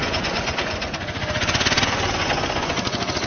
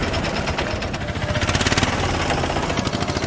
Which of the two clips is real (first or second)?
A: second